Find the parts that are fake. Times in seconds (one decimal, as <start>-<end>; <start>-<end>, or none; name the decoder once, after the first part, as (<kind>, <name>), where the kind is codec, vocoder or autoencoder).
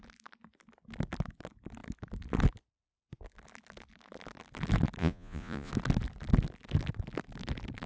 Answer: 5.0-5.7 (vocoder, Vocos)